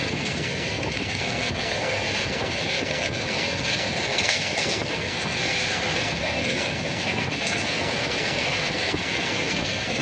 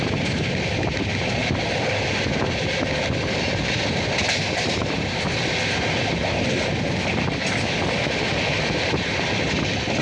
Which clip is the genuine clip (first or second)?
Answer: second